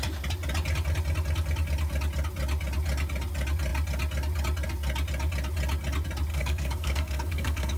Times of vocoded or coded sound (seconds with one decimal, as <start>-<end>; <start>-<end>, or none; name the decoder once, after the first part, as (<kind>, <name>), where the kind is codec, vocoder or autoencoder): 6.3-7.8 (codec, SNAC)